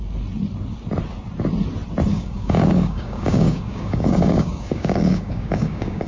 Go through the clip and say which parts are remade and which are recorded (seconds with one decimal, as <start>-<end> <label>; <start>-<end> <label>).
0.0-2.1 recorded; 2.1-6.1 remade